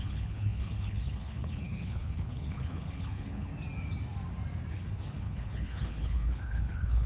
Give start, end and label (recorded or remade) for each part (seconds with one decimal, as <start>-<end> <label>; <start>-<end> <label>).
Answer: 0.0-3.5 remade; 3.5-4.7 recorded; 4.7-7.1 remade